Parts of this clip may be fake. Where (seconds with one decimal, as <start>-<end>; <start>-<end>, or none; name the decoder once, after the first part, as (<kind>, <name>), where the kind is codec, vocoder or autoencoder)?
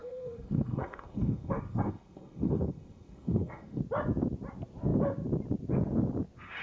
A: 0.0-3.8 (codec, SNAC)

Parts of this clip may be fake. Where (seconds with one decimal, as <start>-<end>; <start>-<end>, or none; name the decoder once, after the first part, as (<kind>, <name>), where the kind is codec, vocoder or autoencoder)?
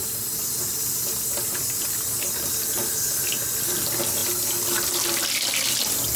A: none